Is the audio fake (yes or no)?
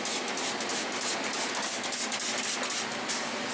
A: no